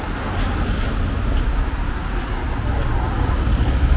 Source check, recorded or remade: recorded